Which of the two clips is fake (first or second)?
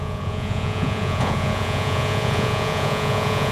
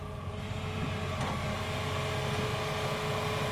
first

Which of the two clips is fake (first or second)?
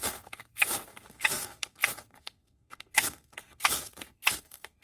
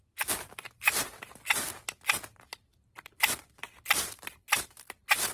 first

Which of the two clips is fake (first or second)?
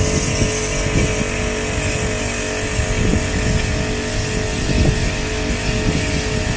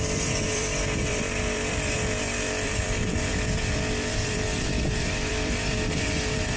second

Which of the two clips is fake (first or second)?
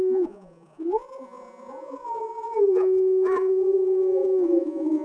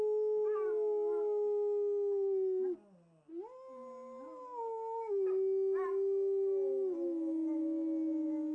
first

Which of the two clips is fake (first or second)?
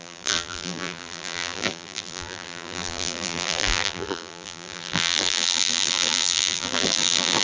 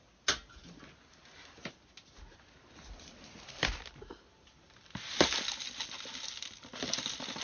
first